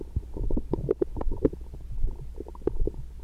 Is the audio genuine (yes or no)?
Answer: yes